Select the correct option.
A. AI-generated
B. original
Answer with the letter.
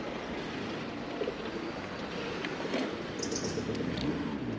B